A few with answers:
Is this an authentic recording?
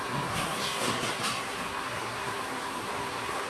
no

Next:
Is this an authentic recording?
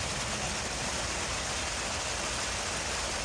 yes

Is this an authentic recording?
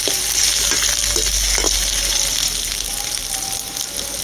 yes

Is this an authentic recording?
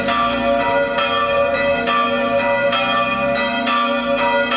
yes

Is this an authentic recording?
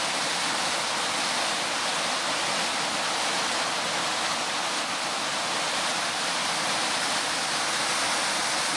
yes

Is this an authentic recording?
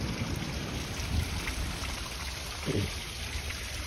no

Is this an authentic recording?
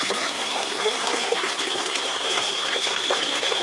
no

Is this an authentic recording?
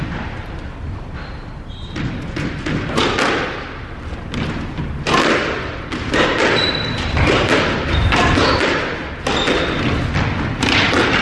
yes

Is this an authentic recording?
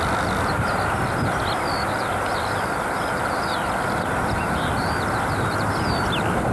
yes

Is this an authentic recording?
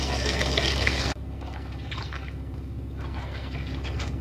no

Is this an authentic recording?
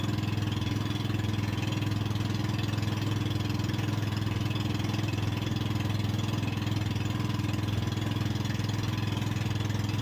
yes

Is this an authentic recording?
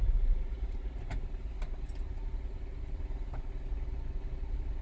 yes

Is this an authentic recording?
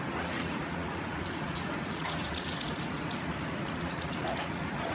no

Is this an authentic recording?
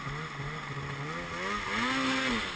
yes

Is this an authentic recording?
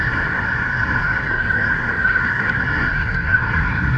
no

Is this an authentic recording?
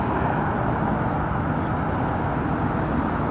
yes